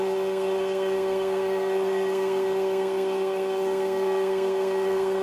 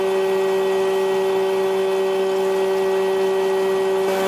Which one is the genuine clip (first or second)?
second